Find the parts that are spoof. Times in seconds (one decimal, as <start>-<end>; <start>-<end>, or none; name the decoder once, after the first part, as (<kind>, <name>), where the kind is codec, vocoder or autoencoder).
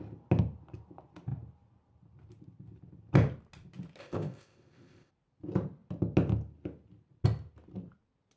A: 4.0-5.1 (codec, ZipCodec)